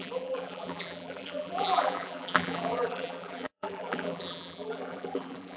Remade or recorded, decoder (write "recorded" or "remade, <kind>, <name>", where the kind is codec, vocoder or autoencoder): remade, vocoder, BigVGAN v2